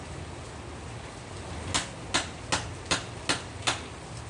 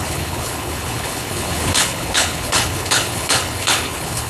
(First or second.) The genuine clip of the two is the first